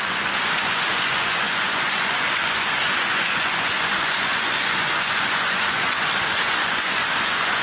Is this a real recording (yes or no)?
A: no